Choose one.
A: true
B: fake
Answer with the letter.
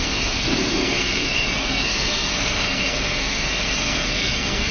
B